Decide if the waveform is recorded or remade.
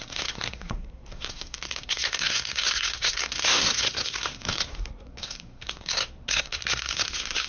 remade